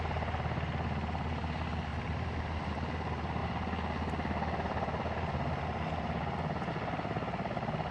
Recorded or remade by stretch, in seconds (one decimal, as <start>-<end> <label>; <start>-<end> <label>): 0.0-1.9 recorded; 1.9-2.7 remade; 2.7-7.9 recorded